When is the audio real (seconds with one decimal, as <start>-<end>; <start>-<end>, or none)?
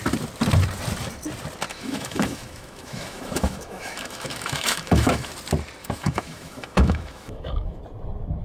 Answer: 0.0-1.7; 5.3-5.8; 7.8-8.4